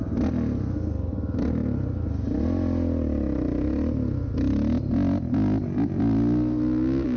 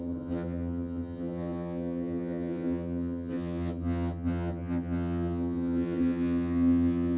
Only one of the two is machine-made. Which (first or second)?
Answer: second